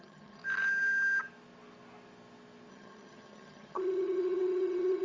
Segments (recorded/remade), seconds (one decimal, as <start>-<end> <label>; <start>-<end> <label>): 0.0-0.4 remade; 0.4-2.7 recorded; 2.7-5.0 remade